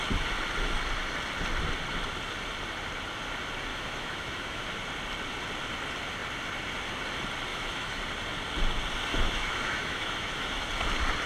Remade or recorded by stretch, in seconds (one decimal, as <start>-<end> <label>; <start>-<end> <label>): 0.0-3.7 recorded; 3.7-4.7 remade; 4.7-7.5 recorded; 7.5-8.0 remade; 8.0-9.1 recorded; 9.1-10.7 remade; 10.7-11.3 recorded